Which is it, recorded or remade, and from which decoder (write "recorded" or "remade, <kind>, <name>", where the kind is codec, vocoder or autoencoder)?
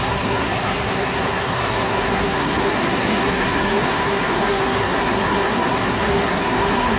remade, codec, SNAC